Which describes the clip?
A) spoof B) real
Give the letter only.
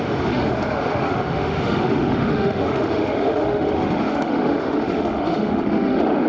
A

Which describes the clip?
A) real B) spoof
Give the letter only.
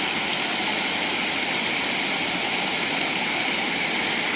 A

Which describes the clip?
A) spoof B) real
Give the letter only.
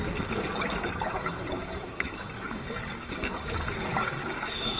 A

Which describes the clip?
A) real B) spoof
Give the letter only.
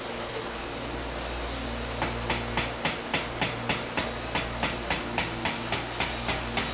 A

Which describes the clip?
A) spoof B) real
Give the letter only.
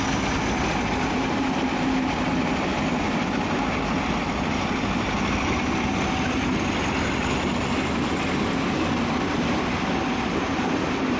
B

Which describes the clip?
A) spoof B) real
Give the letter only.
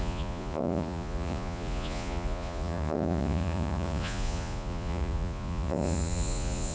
A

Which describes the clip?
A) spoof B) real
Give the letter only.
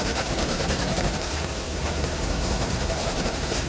A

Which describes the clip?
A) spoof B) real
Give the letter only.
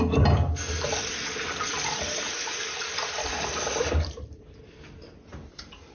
B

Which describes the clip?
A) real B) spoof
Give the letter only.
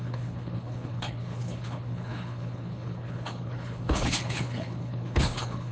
B